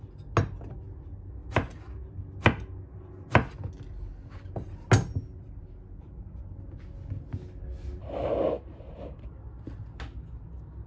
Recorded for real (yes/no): yes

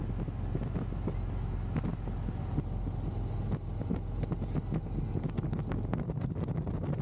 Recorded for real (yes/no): yes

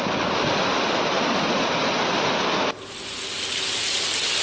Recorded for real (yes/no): yes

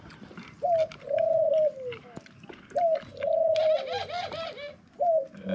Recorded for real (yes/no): yes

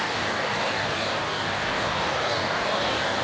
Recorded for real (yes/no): no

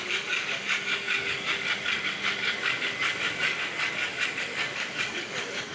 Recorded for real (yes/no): no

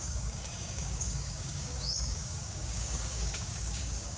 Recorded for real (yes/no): no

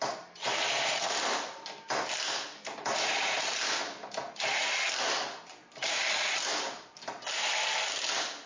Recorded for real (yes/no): yes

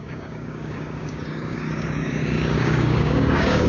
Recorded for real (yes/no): no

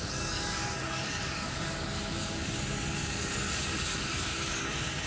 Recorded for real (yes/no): no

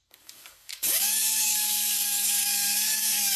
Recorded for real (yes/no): no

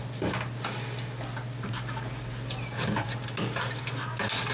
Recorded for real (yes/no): yes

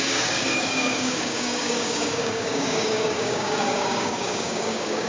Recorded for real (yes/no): no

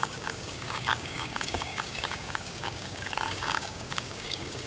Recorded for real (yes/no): no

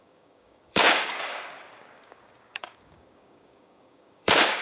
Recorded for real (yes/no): no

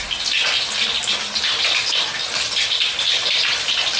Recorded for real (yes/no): yes